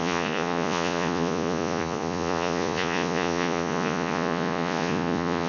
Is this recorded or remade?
remade